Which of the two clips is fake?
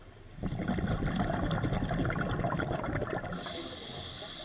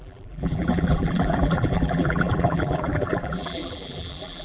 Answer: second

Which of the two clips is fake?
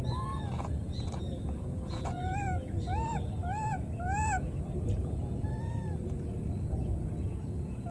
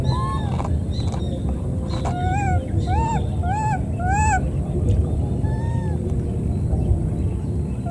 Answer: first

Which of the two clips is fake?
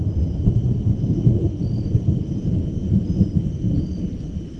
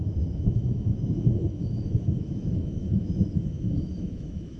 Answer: second